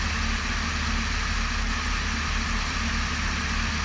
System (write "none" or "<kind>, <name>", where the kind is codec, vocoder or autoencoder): none